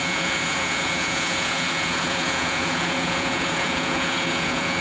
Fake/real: fake